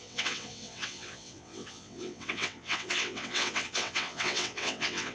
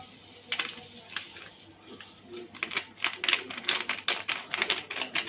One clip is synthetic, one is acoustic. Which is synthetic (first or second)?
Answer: first